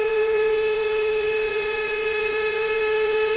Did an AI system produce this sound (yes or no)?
yes